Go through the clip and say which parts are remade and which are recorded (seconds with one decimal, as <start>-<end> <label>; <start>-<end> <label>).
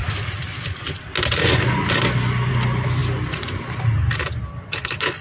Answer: 0.0-5.2 recorded